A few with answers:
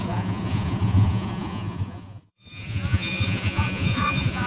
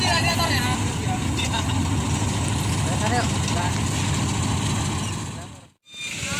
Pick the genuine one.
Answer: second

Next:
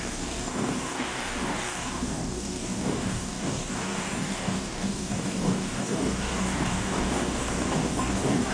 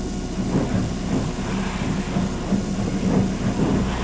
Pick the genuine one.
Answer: second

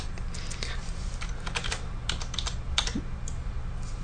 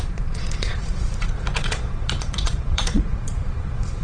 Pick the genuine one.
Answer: first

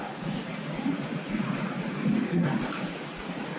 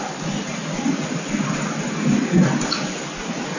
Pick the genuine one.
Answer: second